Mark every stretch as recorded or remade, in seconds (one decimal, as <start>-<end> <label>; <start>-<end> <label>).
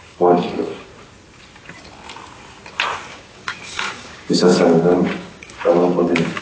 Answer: 0.0-0.9 remade; 0.9-3.1 recorded; 3.1-6.4 remade